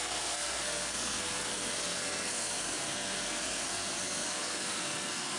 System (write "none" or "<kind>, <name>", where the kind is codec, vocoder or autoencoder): codec, SNAC